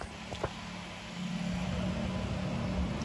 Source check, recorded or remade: recorded